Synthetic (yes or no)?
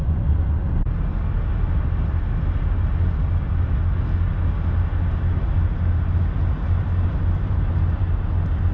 no